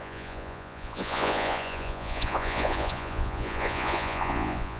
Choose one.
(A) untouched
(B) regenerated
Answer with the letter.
B